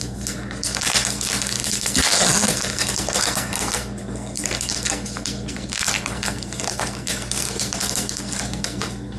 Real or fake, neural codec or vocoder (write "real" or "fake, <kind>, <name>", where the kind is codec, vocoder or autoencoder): fake, codec, SNAC